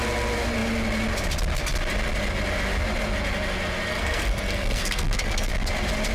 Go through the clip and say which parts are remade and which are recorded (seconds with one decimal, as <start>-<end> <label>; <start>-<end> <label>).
0.0-3.9 recorded; 3.9-5.5 remade; 5.5-6.1 recorded